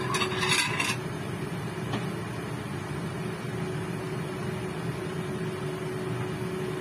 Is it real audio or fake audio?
real